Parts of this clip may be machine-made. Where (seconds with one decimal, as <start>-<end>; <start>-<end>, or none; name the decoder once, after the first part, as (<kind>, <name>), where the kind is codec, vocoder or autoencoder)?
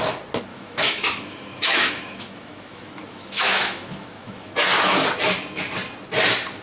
0.5-4.5 (autoencoder, DAC-VAE)